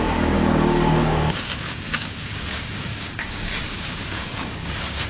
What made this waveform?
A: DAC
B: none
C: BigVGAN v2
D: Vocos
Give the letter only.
A